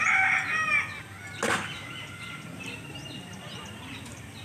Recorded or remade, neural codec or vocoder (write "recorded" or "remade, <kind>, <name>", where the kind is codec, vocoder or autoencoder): recorded